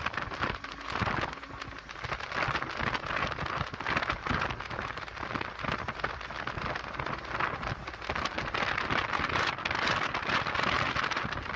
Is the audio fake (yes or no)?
no